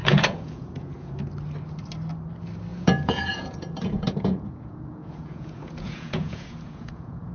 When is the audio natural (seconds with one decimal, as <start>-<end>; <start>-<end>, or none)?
1.2-2.7